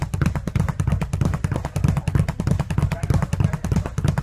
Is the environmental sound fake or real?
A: real